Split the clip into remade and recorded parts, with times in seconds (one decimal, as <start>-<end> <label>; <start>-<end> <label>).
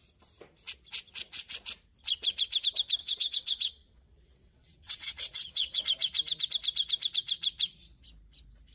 0.0-3.0 recorded; 3.0-5.8 remade; 5.8-8.7 recorded